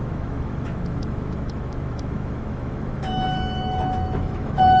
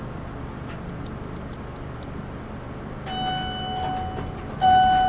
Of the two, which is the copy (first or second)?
first